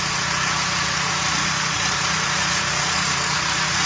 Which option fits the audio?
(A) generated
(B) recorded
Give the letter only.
A